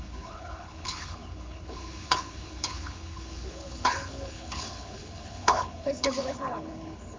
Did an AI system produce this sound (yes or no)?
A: yes